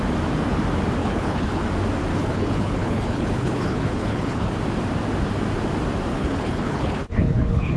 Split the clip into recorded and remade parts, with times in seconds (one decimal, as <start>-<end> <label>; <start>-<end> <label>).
0.0-1.0 recorded; 1.0-1.6 remade; 1.6-2.1 recorded; 2.1-4.5 remade; 4.5-6.1 recorded; 6.1-7.8 remade

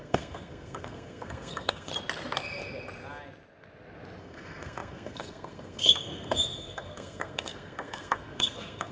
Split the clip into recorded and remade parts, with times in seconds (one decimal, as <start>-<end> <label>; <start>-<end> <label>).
0.0-1.9 remade; 1.9-4.2 recorded; 4.2-8.9 remade

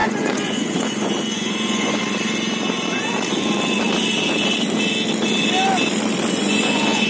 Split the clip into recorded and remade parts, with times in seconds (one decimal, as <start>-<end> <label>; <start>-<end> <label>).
0.0-2.0 remade; 2.0-6.3 recorded; 6.3-7.1 remade